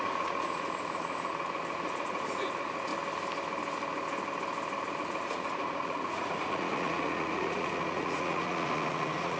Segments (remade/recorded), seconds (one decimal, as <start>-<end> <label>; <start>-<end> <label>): 0.0-2.9 remade; 2.9-4.9 recorded; 4.9-9.4 remade